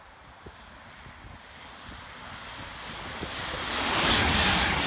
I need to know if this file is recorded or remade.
recorded